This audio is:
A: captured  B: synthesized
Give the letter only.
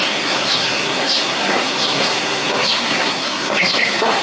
B